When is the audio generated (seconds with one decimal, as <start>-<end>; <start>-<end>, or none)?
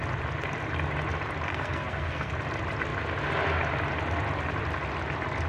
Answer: 1.5-2.3